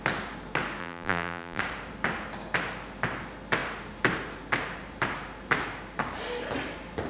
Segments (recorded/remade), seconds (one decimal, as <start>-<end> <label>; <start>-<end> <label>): 0.0-0.8 recorded; 0.8-1.6 remade; 1.6-7.1 recorded